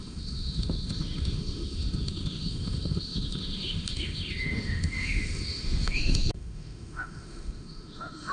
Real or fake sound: fake